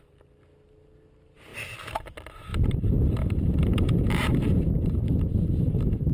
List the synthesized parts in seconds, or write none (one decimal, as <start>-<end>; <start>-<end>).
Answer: 1.5-2.1; 2.5-4.7